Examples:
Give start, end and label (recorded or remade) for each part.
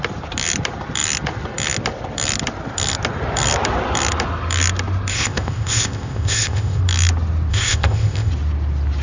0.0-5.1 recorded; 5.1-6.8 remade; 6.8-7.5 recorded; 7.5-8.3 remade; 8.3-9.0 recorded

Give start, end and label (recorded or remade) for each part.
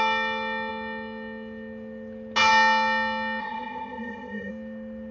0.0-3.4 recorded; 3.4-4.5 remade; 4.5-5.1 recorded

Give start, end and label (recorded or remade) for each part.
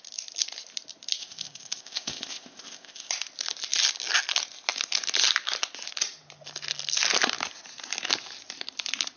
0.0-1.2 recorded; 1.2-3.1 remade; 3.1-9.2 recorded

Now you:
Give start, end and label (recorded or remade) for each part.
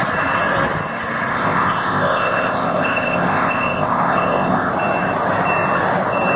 0.0-1.3 recorded; 1.3-4.7 remade; 4.7-6.4 recorded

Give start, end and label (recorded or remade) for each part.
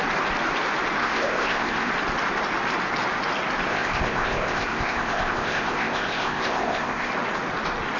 0.0-1.0 recorded; 1.0-1.9 remade; 1.9-3.7 recorded; 3.7-7.1 remade; 7.1-8.0 recorded